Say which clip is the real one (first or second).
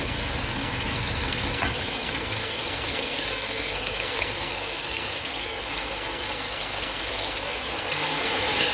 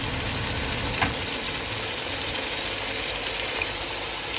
second